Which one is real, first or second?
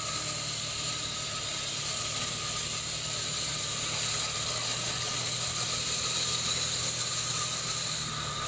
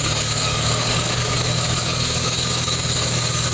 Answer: first